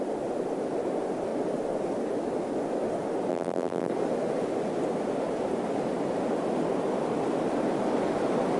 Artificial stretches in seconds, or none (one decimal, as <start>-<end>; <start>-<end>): 3.3-3.9